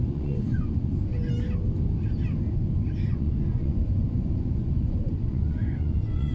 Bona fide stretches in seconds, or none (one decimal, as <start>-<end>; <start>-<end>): 1.1-3.1